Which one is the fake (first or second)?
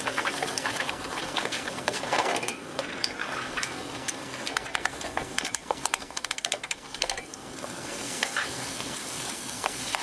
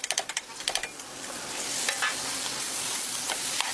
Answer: first